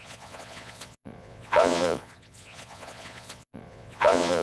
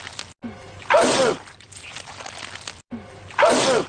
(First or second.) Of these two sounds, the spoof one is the first